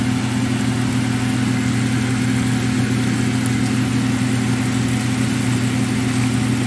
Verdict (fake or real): real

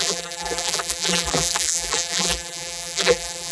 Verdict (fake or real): fake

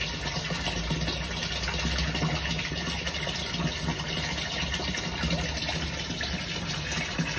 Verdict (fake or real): real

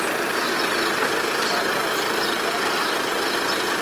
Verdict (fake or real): fake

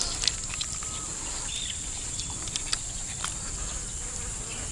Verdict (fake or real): fake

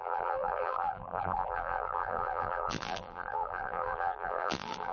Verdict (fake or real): fake